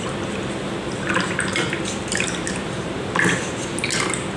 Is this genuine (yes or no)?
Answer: yes